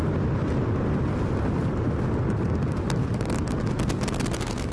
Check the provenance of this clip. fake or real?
real